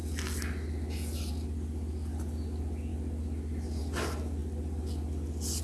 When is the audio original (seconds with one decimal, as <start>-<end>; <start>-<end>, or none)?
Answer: 0.0-5.6